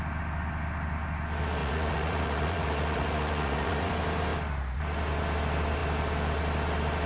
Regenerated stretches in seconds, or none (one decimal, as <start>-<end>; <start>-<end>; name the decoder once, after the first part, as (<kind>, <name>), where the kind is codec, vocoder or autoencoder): 1.6-3.9 (vocoder, Vocos)